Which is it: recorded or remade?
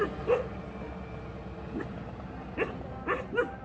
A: recorded